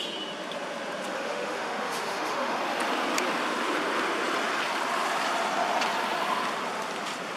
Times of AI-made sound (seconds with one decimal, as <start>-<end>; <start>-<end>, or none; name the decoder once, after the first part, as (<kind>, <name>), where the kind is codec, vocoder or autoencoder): 1.1-2.6 (autoencoder, DAC-VAE)